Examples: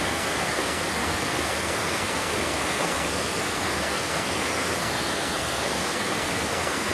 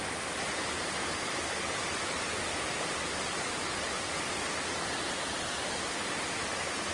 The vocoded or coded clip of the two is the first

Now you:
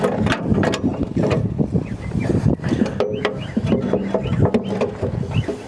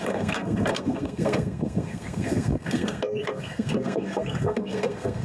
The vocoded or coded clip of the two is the second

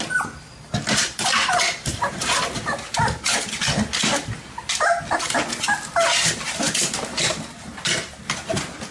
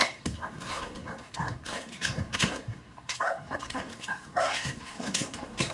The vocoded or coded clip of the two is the second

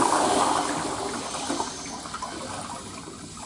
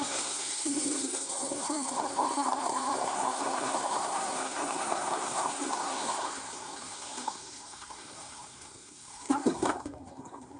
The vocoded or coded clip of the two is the second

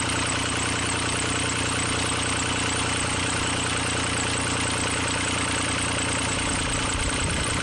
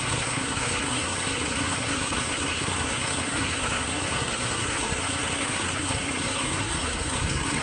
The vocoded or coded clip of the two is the second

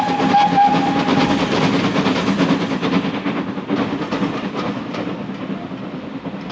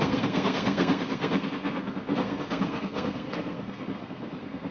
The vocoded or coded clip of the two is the second